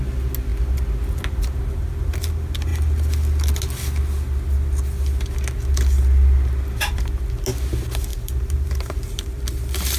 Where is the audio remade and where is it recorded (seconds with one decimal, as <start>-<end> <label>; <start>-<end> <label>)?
0.0-8.1 recorded; 8.1-9.4 remade; 9.4-10.0 recorded